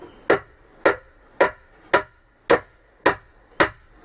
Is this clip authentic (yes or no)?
yes